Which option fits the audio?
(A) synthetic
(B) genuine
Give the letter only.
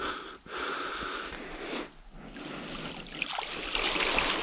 B